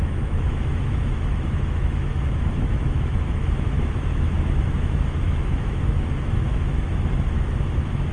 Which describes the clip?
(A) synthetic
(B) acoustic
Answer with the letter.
A